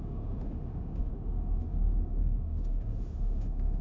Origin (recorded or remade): remade